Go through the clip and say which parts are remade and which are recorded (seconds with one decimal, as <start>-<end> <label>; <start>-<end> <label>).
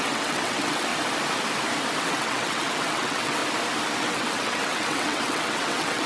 0.0-0.9 remade; 0.9-2.0 recorded; 2.0-3.4 remade; 3.4-4.0 recorded; 4.0-6.1 remade